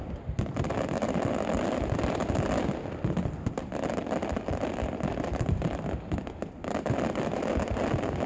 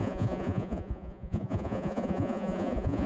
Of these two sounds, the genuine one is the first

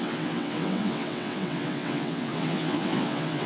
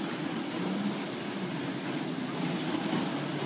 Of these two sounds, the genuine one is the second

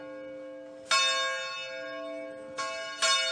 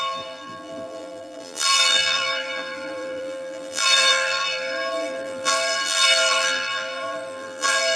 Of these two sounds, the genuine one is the first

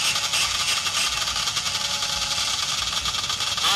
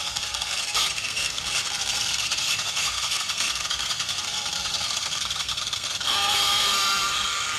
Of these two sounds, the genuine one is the first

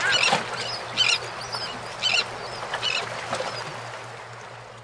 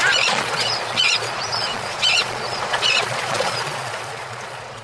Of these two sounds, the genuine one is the first